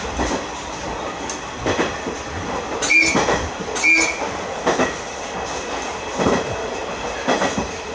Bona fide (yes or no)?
yes